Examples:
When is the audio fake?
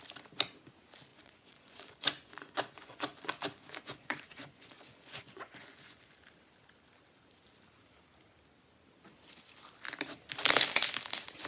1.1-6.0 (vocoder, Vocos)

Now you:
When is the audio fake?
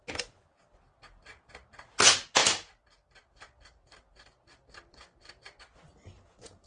none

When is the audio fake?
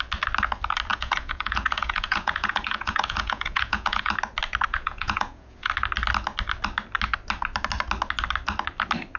0.9-4.1 (vocoder, Vocos); 4.7-5.7